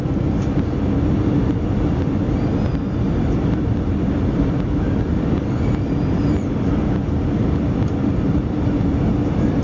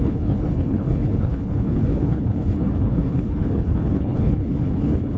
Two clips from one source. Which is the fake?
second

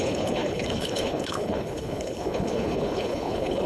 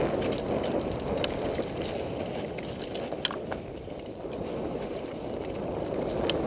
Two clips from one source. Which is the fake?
first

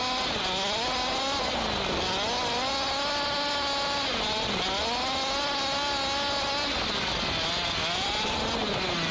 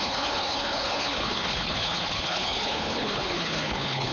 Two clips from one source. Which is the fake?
second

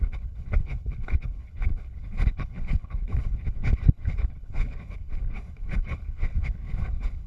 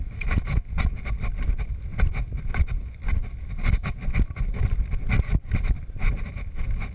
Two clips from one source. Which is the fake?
first